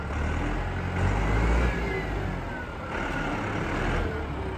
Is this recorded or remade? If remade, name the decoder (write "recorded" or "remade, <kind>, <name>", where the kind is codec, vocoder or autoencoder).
recorded